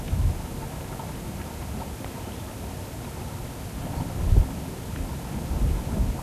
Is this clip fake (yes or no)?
no